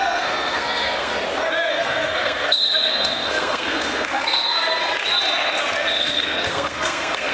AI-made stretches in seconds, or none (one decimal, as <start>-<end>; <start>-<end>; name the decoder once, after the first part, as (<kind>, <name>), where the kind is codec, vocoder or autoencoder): 0.0-1.1 (codec, SNAC); 1.7-4.8; 6.0-7.3